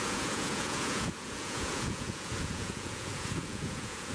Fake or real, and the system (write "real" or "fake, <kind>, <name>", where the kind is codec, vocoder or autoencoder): fake, vocoder, Vocos